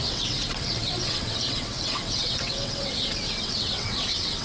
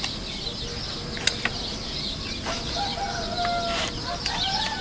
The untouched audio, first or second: second